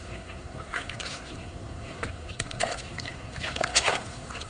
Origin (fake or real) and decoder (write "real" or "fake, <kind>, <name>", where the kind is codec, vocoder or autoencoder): fake, codec, SNAC